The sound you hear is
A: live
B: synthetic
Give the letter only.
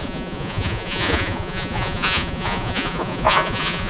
B